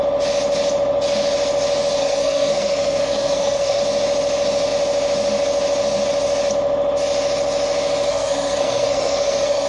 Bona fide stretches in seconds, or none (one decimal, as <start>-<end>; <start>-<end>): 0.0-2.0; 3.8-8.1